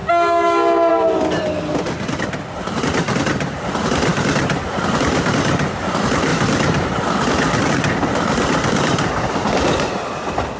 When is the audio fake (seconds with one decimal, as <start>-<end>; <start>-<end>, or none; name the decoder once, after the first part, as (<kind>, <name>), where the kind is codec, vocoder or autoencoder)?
0.9-6.3 (vocoder, BigVGAN v2); 7.6-10.6